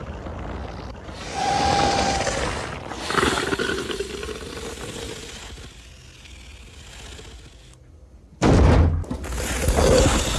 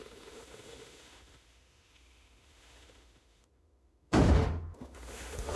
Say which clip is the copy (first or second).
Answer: second